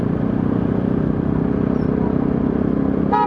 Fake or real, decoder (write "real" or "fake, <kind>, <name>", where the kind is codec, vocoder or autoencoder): real